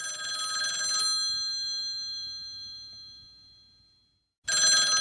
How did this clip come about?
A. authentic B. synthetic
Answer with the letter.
A